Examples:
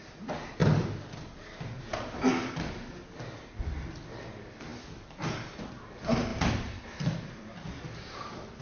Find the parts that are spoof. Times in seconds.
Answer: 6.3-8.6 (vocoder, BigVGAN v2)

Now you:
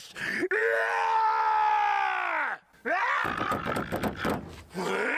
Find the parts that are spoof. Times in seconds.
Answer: none

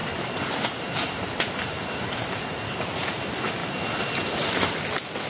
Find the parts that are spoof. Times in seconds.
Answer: 0.0-3.2 (vocoder, BigVGAN v2)

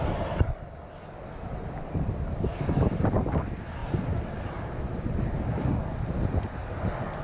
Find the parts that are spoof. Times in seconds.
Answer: none